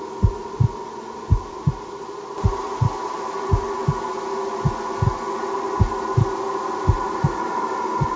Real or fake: real